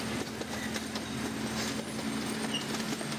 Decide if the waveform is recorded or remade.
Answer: recorded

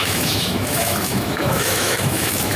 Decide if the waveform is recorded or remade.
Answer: remade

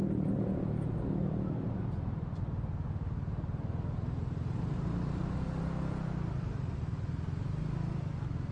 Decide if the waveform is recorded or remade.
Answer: recorded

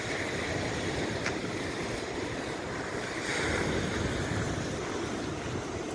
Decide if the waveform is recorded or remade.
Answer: recorded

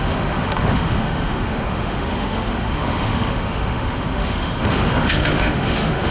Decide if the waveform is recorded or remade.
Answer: remade